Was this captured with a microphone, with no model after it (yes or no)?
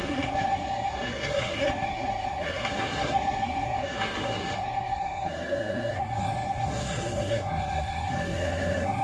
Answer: no